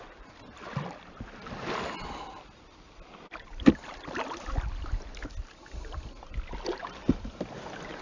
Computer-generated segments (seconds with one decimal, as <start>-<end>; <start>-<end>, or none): none